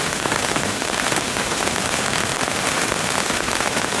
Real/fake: fake